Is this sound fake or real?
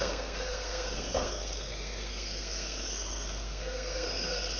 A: fake